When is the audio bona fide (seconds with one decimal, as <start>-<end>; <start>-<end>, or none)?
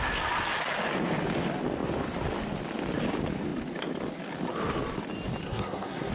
0.0-5.4